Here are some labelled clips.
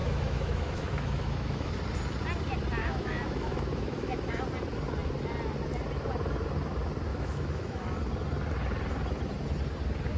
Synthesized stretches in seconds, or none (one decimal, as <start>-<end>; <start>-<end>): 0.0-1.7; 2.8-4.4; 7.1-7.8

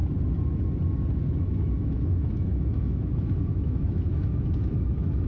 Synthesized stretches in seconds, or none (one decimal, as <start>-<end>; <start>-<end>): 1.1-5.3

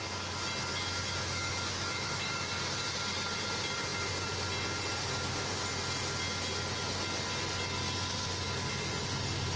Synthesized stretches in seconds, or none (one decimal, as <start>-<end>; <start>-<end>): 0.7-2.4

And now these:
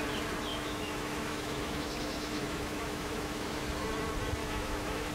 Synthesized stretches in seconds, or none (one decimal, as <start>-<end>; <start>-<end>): 0.5-3.6; 4.4-5.1